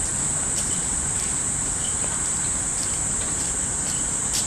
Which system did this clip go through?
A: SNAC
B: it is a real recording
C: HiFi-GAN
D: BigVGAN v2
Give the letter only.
D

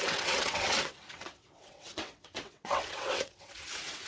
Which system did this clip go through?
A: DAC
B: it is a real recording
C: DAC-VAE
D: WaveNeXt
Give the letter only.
D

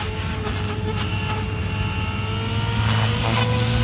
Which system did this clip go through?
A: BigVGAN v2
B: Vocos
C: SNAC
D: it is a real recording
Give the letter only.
D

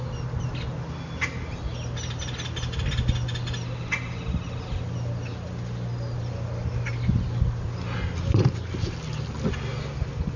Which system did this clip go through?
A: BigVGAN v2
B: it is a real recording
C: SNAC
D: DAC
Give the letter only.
B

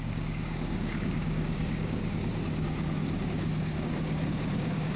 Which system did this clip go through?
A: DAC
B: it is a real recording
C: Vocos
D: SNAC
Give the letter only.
A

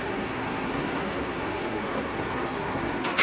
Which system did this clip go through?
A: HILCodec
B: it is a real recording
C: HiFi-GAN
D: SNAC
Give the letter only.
D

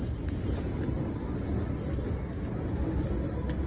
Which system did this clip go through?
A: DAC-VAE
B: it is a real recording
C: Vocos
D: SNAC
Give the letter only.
B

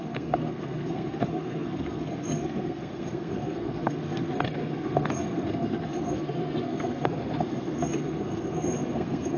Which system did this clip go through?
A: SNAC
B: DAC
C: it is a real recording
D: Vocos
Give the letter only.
A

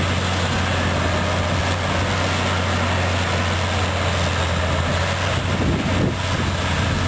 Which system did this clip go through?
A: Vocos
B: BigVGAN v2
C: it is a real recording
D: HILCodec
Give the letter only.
C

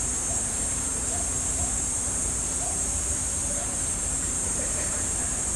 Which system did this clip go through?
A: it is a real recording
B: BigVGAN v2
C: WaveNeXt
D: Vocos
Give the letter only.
B